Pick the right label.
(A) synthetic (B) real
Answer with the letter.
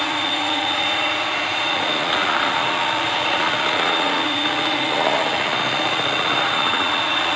A